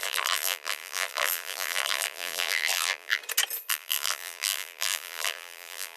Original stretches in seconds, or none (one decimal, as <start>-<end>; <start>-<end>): 3.2-3.7